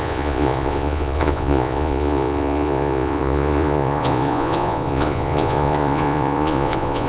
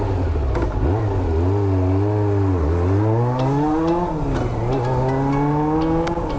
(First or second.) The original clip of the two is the second